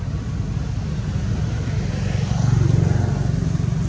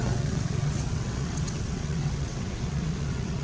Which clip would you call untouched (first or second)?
first